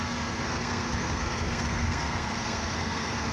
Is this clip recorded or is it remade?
remade